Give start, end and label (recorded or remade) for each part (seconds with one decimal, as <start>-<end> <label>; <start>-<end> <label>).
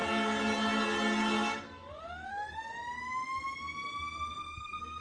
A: 0.0-2.0 recorded; 2.0-2.7 remade; 2.7-4.4 recorded; 4.4-5.0 remade